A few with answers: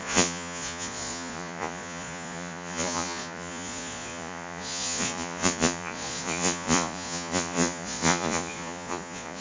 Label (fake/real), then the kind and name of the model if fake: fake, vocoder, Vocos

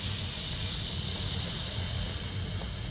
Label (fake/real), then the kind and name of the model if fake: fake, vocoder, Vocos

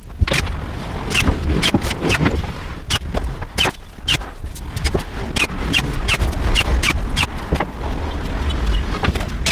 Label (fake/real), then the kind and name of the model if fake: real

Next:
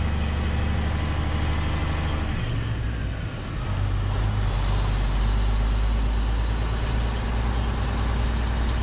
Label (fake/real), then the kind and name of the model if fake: real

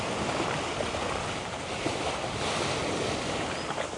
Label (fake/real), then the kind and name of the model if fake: real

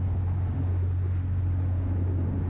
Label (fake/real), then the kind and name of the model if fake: real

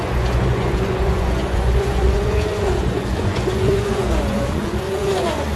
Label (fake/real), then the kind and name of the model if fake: fake, vocoder, Vocos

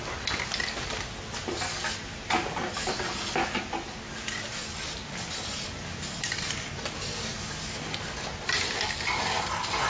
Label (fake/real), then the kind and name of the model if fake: real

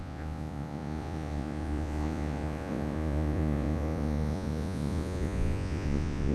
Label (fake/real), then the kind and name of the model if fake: fake, vocoder, Vocos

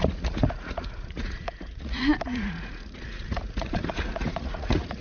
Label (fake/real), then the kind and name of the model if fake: fake, vocoder, Vocos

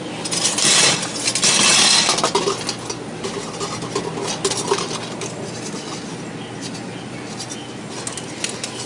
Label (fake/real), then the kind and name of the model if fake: real